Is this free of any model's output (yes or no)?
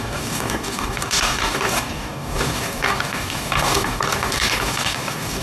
no